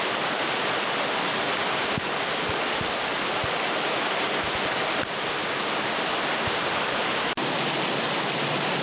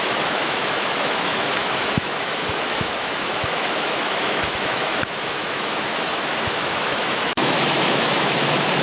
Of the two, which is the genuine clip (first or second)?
first